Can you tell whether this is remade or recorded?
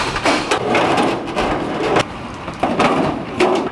recorded